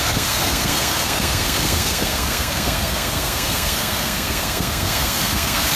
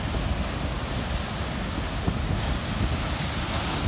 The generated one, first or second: first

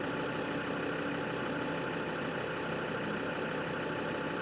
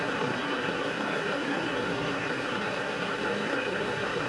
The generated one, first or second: second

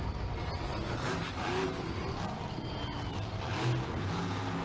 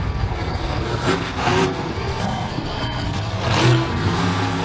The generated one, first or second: second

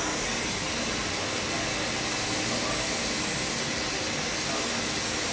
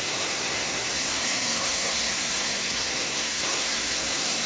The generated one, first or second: second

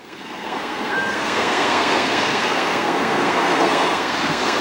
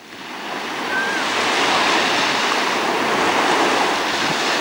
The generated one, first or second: first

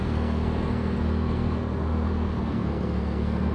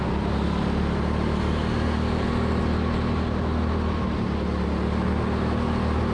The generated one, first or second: first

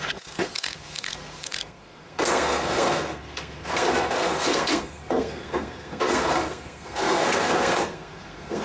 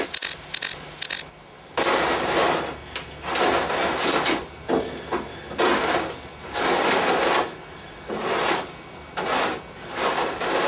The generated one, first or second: first